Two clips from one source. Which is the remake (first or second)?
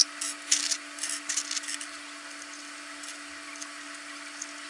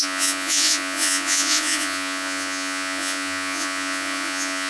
second